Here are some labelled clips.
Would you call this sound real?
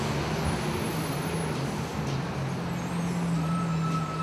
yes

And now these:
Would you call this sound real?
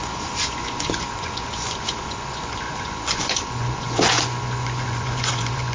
no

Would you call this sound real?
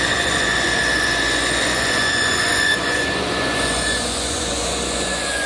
no